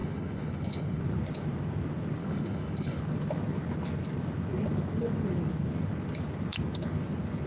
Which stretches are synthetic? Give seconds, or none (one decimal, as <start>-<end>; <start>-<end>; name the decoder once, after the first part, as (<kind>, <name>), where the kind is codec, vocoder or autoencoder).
0.0-1.0 (codec, HILCodec); 2.2-3.0